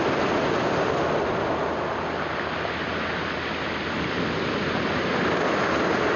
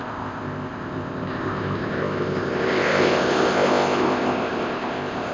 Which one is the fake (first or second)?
second